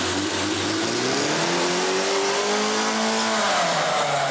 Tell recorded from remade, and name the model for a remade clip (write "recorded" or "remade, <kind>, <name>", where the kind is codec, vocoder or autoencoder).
recorded